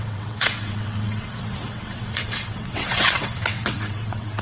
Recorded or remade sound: remade